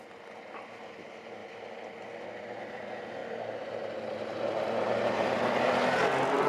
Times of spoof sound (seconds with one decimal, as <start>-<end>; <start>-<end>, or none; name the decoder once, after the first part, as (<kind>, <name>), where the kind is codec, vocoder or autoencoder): 1.4-2.6 (vocoder, BigVGAN v2); 3.2-5.3